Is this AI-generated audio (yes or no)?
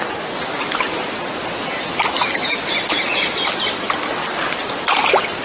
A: no